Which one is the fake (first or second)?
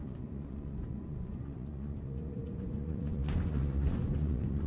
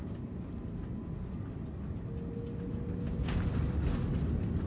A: first